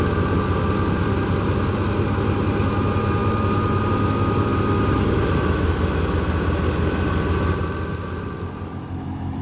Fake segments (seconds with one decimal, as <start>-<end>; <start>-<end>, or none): none